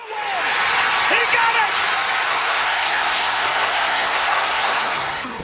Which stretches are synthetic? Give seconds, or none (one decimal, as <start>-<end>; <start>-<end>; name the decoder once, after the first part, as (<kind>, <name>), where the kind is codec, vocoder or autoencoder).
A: 2.3-5.4 (codec, SNAC)